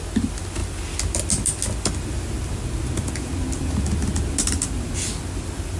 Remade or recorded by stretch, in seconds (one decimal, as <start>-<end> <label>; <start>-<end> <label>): 0.0-5.8 recorded

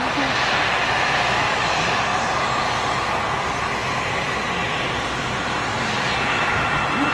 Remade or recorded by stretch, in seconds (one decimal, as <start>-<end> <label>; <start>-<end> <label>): 0.0-7.1 recorded

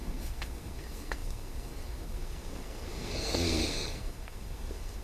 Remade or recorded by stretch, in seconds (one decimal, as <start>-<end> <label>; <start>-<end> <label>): 0.0-5.0 remade

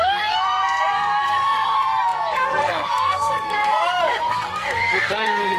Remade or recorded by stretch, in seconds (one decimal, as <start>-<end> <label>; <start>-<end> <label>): 0.0-5.6 remade

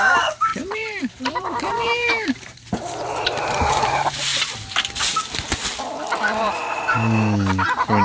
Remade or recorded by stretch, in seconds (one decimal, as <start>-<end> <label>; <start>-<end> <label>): 0.0-4.3 remade; 4.3-6.4 recorded; 6.4-8.0 remade

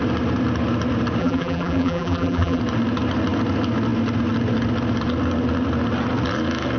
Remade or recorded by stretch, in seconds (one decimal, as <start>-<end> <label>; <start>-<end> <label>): 0.0-1.2 recorded; 1.2-2.6 remade; 2.6-6.8 recorded

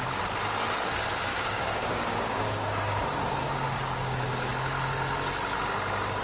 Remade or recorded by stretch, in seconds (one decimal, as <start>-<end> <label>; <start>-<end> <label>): 0.0-1.3 recorded; 1.3-3.0 remade; 3.0-3.4 recorded; 3.4-4.5 remade; 4.5-6.2 recorded